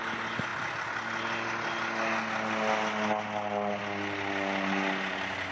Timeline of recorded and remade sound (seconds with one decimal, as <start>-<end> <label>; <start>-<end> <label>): 0.0-5.5 recorded